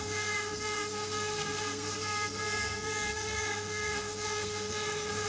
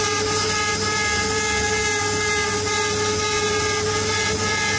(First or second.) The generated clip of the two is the first